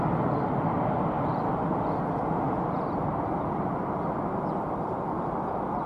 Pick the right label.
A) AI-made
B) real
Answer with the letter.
B